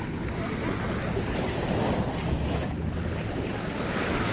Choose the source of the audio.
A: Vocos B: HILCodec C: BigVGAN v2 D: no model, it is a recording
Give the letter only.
D